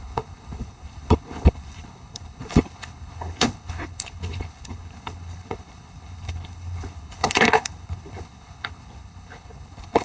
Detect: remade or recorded remade